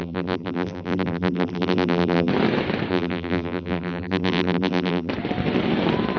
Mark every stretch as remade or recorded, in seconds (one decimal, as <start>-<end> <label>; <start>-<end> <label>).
0.0-2.3 remade; 2.3-2.9 recorded; 2.9-5.1 remade; 5.1-6.2 recorded